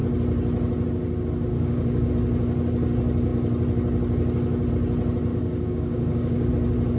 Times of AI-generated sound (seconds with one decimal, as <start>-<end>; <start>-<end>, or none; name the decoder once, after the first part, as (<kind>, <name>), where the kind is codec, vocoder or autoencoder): 1.5-2.1 (codec, DAC); 5.3-6.5

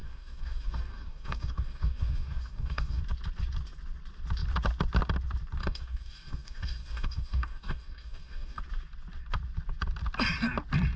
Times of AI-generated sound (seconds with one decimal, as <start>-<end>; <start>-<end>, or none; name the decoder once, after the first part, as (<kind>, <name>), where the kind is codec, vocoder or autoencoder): 0.0-3.0 (codec, DAC); 5.6-8.6

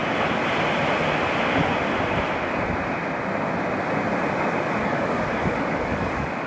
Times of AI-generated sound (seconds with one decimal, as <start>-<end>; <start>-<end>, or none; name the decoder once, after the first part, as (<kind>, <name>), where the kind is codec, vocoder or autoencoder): 4.8-6.5 (codec, DAC)

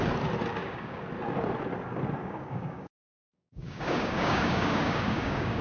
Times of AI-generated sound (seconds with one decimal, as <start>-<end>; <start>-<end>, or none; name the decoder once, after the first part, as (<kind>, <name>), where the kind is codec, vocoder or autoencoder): 0.5-1.0 (codec, DAC); 2.2-5.6

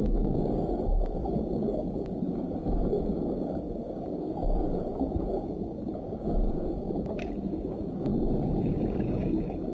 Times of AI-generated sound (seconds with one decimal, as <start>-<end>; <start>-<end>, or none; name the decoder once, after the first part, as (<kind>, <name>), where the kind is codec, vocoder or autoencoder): 0.0-8.1 (codec, DAC); 8.6-9.7